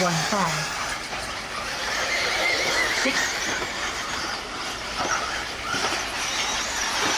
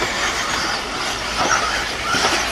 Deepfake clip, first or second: first